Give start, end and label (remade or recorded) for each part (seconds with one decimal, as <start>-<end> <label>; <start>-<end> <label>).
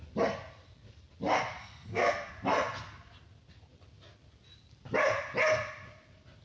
0.0-1.6 recorded; 1.6-2.3 remade; 2.3-6.4 recorded